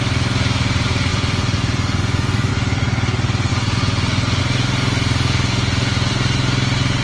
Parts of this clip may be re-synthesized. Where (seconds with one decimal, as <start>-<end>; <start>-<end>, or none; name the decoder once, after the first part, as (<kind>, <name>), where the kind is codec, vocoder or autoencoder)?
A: 1.1-2.5 (vocoder, Vocos); 3.5-4.4